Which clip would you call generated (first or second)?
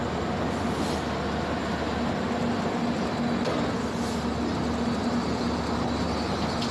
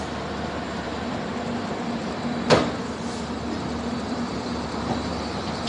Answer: second